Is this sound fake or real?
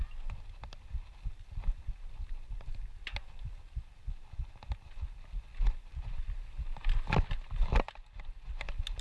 real